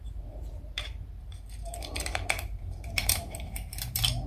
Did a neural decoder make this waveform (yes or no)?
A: yes